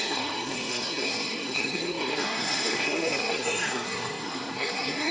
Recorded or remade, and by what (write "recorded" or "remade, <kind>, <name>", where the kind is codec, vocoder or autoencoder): remade, codec, SNAC